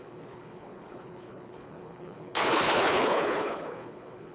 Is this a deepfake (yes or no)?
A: yes